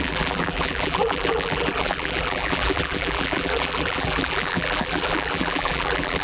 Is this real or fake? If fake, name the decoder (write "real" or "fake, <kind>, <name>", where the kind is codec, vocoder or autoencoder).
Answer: fake, vocoder, BigVGAN v2